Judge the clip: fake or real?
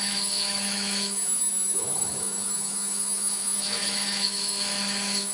fake